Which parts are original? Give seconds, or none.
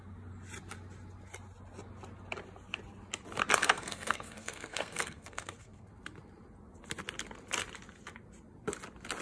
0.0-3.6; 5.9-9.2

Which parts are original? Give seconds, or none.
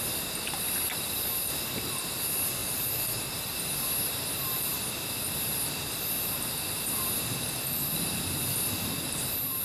0.0-9.6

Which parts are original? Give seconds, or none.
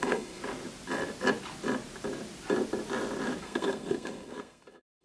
0.4-3.4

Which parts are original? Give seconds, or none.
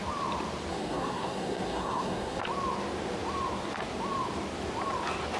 0.0-0.7; 2.4-5.4